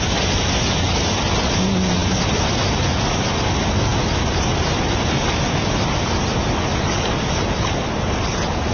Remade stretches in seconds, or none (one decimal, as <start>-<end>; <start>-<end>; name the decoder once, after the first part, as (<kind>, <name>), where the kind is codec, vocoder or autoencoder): none